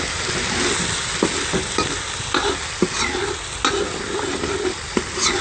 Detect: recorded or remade recorded